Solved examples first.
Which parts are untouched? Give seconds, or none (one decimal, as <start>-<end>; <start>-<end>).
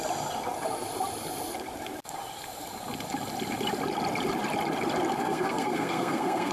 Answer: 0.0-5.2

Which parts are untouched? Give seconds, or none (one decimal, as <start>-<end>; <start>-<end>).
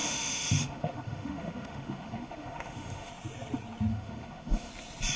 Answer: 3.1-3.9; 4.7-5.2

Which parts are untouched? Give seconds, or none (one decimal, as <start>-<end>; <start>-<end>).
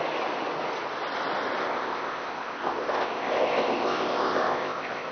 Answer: 0.0-1.6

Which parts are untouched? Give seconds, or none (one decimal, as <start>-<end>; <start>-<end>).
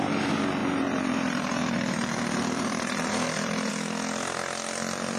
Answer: 0.0-0.6; 3.7-5.2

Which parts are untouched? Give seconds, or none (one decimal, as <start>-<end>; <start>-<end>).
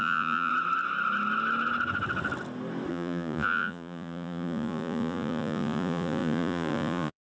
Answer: 0.5-2.9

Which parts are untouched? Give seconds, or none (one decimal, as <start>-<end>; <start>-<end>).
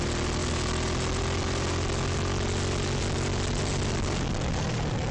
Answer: 0.0-5.1